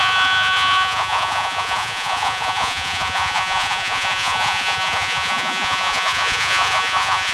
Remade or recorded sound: remade